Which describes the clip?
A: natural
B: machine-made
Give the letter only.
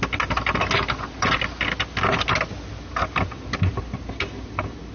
A